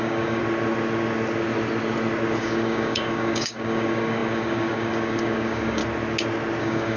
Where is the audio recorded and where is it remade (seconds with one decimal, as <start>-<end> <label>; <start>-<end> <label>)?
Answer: 0.0-0.4 remade; 0.4-2.4 recorded; 2.4-5.8 remade; 5.8-6.6 recorded; 6.6-7.0 remade